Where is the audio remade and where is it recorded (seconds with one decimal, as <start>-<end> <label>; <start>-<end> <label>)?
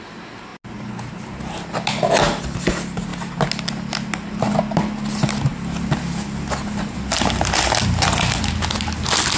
0.0-9.4 recorded